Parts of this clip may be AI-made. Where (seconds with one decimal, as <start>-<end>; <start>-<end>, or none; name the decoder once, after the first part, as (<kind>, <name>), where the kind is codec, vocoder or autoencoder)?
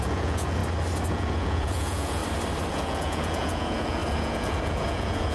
0.0-0.6 (vocoder, Vocos); 1.1-2.2; 2.7-5.3